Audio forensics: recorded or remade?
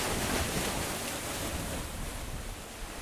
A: recorded